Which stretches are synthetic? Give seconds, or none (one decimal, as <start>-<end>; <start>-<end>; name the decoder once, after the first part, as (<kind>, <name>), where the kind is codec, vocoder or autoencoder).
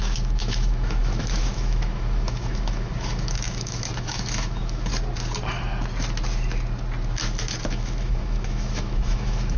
0.0-4.9 (autoencoder, DAC-VAE); 7.7-9.6